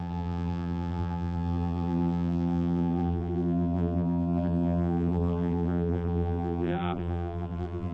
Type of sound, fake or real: fake